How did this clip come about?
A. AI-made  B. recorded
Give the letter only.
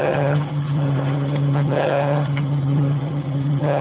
A